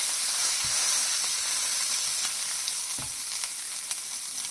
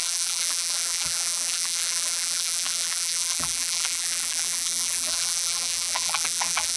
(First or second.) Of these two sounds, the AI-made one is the second